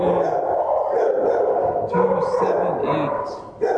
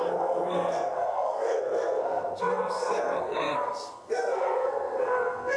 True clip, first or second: first